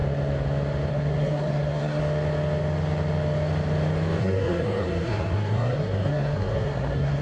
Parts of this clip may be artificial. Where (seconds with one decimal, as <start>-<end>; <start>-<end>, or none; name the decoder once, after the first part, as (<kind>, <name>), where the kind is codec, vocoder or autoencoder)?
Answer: 0.9-2.0 (codec, SNAC); 4.2-7.2